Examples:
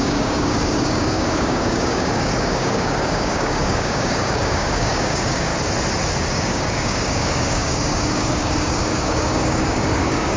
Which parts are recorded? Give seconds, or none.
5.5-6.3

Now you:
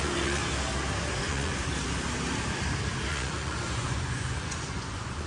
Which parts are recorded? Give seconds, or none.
0.4-1.2; 1.7-3.1

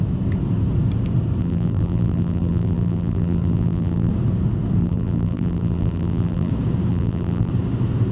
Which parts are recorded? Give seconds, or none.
0.0-1.4; 4.1-4.8; 6.5-6.9; 7.5-8.1

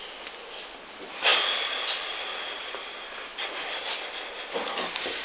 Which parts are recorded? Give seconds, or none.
0.0-5.2

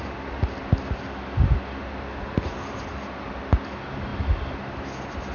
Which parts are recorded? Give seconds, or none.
0.0-5.3

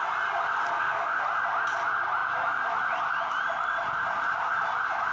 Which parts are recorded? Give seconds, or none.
0.0-0.6; 1.2-5.1

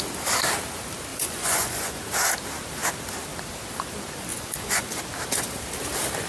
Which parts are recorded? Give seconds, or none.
0.0-1.1; 2.1-4.3; 5.0-6.3